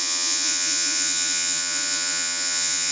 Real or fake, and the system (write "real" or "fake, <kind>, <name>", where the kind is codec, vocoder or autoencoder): fake, vocoder, Vocos